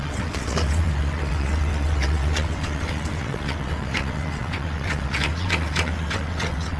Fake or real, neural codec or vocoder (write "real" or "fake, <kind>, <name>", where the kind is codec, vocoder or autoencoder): fake, vocoder, WaveNeXt